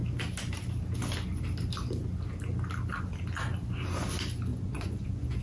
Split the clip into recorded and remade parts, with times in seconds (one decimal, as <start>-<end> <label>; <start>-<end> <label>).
0.0-4.5 recorded; 4.5-5.4 remade